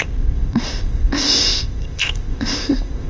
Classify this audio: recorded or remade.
remade